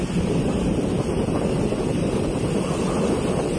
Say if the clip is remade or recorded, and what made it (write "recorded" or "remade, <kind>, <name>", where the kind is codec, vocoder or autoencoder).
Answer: recorded